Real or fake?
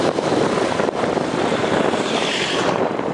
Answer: fake